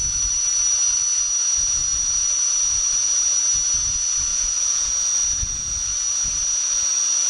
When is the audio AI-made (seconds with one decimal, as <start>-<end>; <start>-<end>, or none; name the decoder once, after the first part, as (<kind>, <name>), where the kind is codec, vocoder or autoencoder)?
4.3-4.9 (vocoder, Vocos)